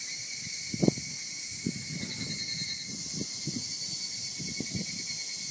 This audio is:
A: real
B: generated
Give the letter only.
A